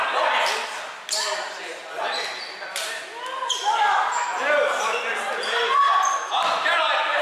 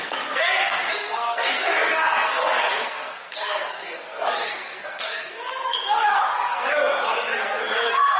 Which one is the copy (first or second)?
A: second